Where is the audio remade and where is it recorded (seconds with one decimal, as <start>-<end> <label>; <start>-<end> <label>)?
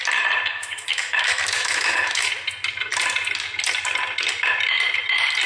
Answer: 0.0-0.5 recorded; 0.5-2.3 remade; 2.3-5.5 recorded